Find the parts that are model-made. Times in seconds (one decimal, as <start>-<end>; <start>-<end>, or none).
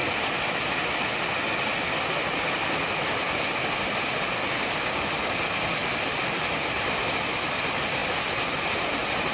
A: none